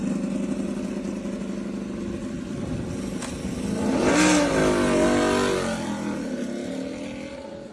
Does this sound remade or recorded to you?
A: recorded